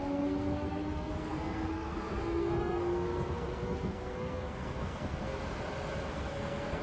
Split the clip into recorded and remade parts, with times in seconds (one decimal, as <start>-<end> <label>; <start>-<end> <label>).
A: 0.0-5.3 remade; 5.3-6.1 recorded; 6.1-6.8 remade

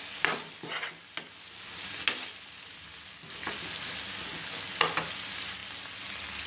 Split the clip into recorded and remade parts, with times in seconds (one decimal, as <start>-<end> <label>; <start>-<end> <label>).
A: 0.0-6.5 recorded

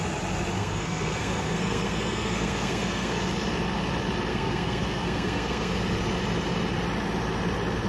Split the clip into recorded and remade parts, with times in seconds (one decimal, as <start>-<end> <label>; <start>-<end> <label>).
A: 0.0-0.6 recorded; 0.6-3.2 remade; 3.2-4.3 recorded; 4.3-5.7 remade; 5.7-7.9 recorded

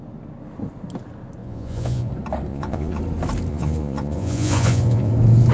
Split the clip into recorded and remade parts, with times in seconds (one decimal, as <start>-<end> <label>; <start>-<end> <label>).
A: 0.0-1.4 recorded; 1.4-2.1 remade; 2.1-2.5 recorded; 2.5-3.0 remade; 3.0-3.5 recorded; 3.5-5.1 remade; 5.1-5.5 recorded

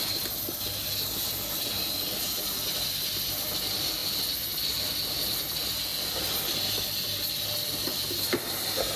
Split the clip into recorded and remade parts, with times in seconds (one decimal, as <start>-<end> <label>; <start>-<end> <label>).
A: 0.0-9.0 recorded

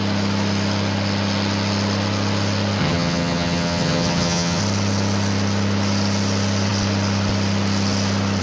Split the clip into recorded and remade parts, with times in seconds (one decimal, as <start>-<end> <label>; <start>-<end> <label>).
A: 0.0-2.8 recorded; 2.8-4.6 remade; 4.6-8.4 recorded

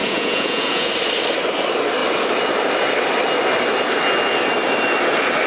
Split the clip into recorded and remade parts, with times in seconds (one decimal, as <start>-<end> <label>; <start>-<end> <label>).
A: 0.0-0.9 remade; 0.9-5.5 recorded